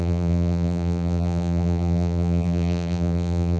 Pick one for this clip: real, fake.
fake